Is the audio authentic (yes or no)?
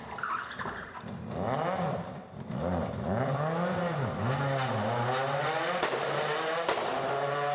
yes